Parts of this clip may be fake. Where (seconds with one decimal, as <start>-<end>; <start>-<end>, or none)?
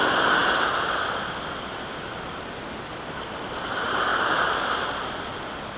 none